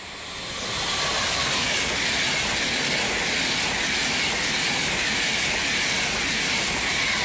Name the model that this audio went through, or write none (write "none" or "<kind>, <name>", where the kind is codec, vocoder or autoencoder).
none